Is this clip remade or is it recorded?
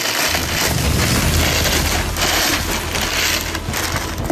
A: recorded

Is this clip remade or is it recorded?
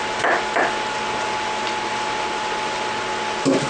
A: recorded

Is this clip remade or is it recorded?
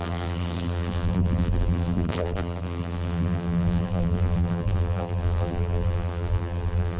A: remade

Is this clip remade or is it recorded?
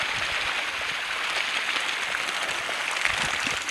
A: recorded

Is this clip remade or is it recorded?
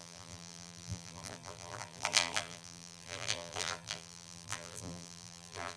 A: remade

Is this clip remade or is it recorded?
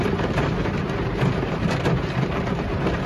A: remade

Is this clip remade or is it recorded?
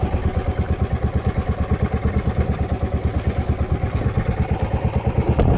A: recorded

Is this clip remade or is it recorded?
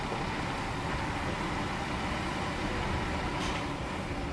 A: recorded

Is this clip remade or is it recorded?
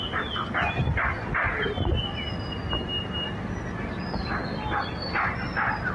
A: recorded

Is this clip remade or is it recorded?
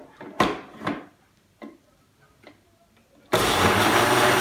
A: recorded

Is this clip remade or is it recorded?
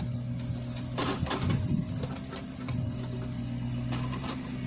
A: recorded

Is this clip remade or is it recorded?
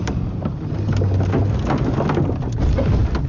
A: recorded